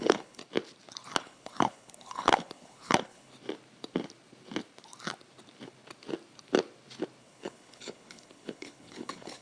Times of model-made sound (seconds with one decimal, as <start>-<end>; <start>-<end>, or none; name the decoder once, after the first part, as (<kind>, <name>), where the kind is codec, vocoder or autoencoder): 0.0-0.4 (codec, HILCodec); 1.2-3.3; 7.2-9.4